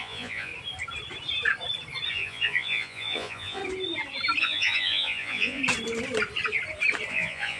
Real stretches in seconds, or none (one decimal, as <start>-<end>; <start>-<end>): 0.5-2.1; 3.6-4.4; 5.6-7.1